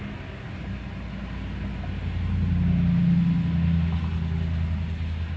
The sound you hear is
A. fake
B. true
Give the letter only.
B